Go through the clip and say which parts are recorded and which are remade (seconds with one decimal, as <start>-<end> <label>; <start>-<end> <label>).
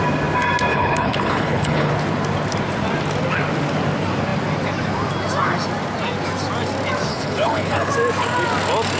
0.0-0.7 recorded; 0.7-1.9 remade; 1.9-7.1 recorded; 7.1-7.9 remade; 7.9-9.0 recorded